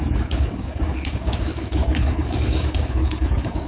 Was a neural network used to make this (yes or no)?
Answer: yes